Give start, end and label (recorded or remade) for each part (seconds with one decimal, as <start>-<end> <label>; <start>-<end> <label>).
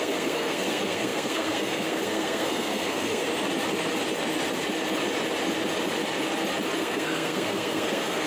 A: 0.0-3.2 remade; 3.2-6.8 recorded; 6.8-8.3 remade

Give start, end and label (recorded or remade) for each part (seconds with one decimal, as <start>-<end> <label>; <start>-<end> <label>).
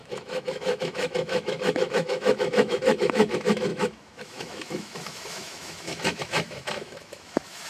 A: 0.0-7.7 remade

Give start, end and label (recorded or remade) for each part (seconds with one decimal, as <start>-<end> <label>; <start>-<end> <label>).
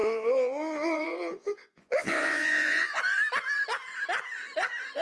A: 0.0-3.0 remade; 3.0-5.0 recorded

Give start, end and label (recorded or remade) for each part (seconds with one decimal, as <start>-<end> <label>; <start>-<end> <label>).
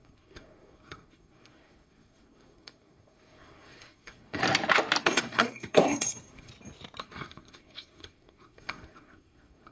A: 0.0-4.4 remade; 4.4-5.0 recorded; 5.0-6.5 remade; 6.5-7.0 recorded; 7.0-9.7 remade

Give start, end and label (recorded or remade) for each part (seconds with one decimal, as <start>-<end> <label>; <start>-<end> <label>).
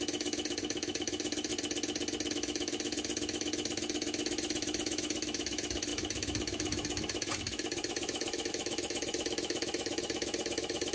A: 0.0-1.5 remade; 1.5-2.3 recorded; 2.3-10.9 remade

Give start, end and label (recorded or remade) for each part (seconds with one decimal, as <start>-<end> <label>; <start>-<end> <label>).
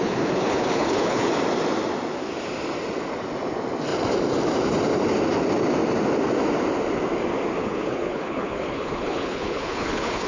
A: 0.0-1.3 remade; 1.3-7.6 recorded; 7.6-10.3 remade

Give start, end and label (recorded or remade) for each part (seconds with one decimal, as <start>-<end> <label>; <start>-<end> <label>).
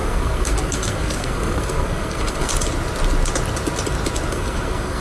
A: 0.0-2.5 remade; 2.5-4.3 recorded; 4.3-5.0 remade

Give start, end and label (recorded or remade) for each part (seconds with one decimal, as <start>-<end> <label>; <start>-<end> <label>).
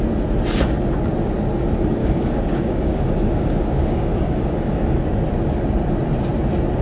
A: 0.0-2.0 recorded; 2.0-5.0 remade; 5.0-6.8 recorded